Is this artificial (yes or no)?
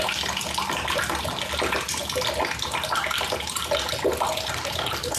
no